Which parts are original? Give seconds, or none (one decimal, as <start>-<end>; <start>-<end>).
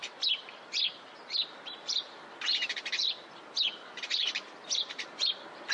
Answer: none